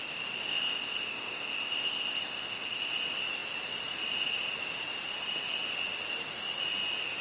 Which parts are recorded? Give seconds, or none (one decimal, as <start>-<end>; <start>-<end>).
0.0-0.5; 2.9-7.2